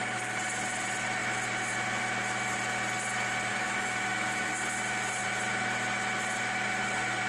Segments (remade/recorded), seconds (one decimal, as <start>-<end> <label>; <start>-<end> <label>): 0.0-3.5 recorded; 3.5-4.5 remade; 4.5-7.3 recorded